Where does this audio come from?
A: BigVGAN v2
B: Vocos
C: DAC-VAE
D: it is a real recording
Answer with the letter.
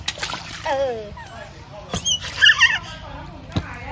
D